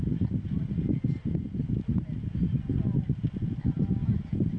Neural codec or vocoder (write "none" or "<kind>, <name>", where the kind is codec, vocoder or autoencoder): none